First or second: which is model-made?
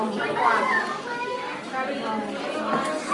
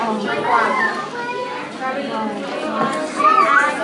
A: first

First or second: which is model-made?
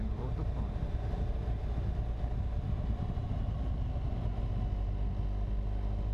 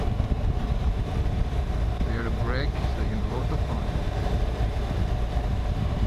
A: second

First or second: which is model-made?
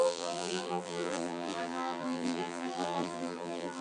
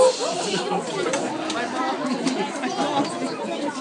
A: first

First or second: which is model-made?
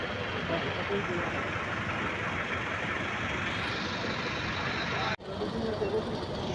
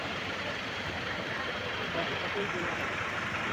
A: second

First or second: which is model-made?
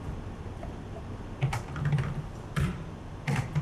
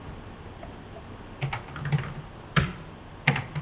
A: first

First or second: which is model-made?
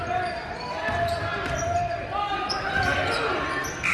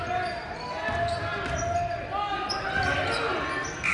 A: first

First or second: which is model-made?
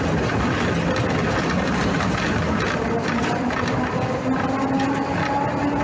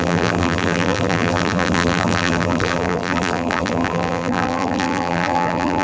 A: second